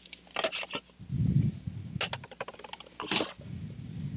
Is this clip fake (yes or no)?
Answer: no